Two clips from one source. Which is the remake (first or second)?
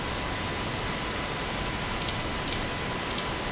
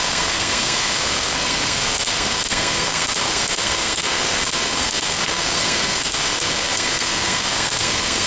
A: second